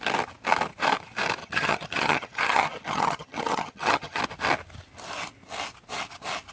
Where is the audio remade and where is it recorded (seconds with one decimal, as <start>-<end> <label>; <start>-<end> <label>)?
0.0-1.4 recorded; 1.4-4.2 remade; 4.2-6.5 recorded

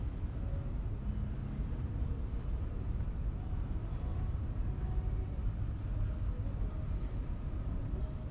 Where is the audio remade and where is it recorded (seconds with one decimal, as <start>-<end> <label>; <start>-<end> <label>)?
0.0-1.4 recorded; 1.4-5.5 remade; 5.5-8.3 recorded

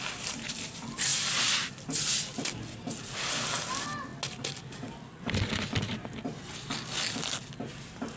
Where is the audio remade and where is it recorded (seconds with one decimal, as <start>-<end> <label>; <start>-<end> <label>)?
0.0-8.2 recorded